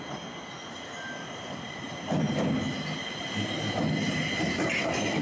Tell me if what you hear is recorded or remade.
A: recorded